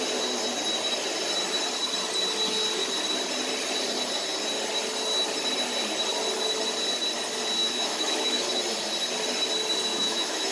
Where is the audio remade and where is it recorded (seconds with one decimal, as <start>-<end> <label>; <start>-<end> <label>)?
0.0-7.6 recorded; 7.6-8.5 remade; 8.5-9.9 recorded; 9.9-10.5 remade